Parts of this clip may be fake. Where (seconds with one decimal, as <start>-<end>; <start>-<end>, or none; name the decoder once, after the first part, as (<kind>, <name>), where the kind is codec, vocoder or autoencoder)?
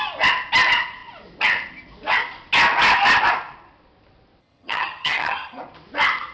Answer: 4.4-5.6 (vocoder, HiFi-GAN)